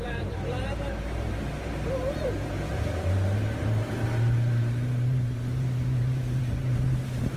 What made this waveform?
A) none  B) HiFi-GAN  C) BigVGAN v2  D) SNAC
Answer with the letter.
C